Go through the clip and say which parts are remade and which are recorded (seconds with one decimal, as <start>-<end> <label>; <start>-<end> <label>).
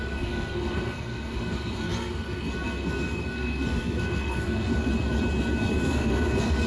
0.0-4.9 remade; 4.9-5.7 recorded; 5.7-6.7 remade